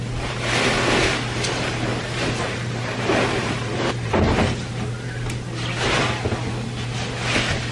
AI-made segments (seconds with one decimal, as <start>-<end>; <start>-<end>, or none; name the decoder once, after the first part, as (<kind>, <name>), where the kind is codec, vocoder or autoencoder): 1.9-4.9 (vocoder, BigVGAN v2)